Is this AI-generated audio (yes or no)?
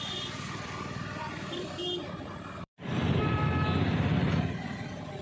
yes